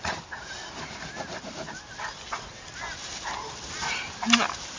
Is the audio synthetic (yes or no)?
no